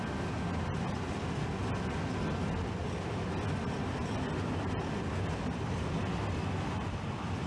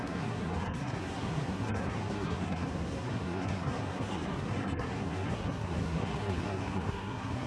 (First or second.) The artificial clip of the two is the second